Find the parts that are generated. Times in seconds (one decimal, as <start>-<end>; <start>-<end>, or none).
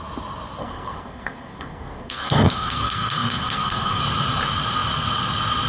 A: 0.6-4.0